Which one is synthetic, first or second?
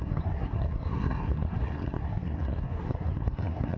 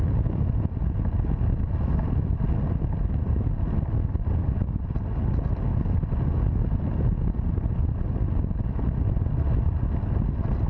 first